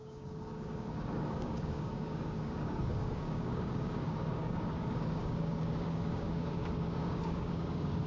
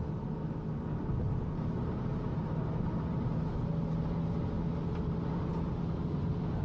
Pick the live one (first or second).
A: second